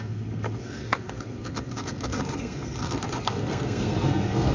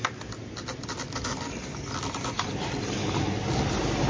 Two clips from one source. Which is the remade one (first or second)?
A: first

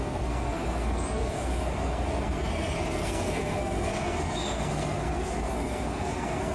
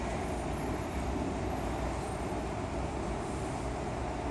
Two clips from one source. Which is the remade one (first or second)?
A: first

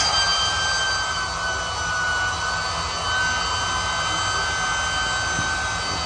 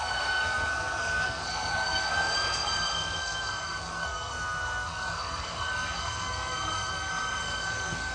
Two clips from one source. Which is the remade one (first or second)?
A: second